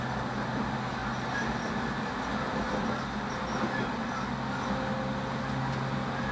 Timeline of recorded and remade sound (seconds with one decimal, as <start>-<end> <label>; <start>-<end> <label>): 0.0-6.3 recorded